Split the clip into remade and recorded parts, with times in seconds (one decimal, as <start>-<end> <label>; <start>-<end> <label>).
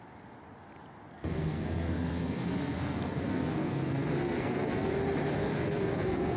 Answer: 0.0-1.1 recorded; 1.1-4.9 remade; 4.9-5.4 recorded; 5.4-6.4 remade